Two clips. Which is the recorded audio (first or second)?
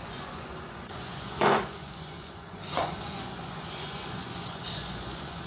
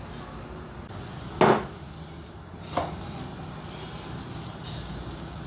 second